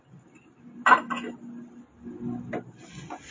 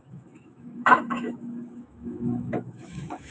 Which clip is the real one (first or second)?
first